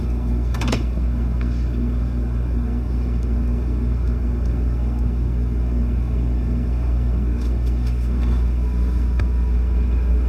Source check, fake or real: fake